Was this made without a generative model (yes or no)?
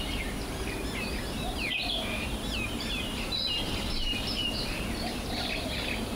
no